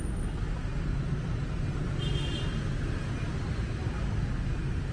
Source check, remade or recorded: recorded